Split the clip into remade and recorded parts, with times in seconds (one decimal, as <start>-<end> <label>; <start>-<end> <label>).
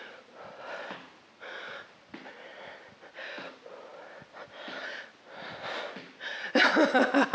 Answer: 0.0-7.3 recorded